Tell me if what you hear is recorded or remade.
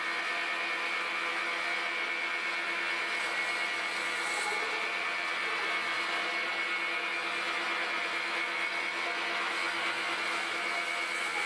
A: recorded